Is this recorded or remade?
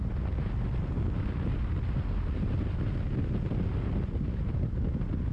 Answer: recorded